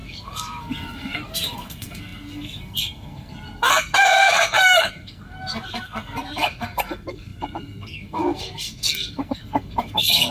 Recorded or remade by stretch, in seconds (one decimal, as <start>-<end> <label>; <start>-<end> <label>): 0.0-10.3 remade